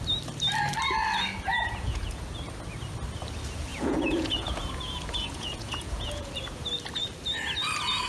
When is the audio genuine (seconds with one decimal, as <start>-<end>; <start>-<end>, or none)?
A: 0.0-1.5; 2.2-3.7; 6.3-8.1